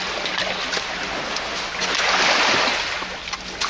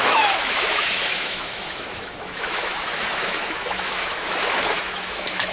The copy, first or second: second